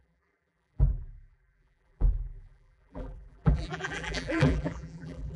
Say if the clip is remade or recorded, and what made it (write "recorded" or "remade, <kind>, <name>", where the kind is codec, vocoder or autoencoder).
remade, vocoder, BigVGAN v2